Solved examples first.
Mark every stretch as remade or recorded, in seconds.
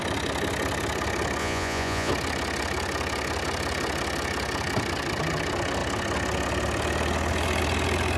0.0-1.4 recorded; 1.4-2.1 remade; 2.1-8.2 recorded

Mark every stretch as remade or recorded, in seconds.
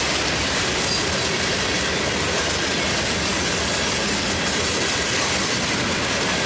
0.0-6.5 recorded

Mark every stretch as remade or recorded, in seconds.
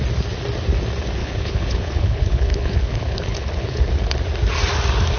0.0-1.2 recorded; 1.2-3.8 remade; 3.8-5.2 recorded